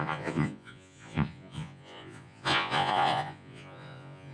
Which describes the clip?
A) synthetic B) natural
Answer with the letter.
A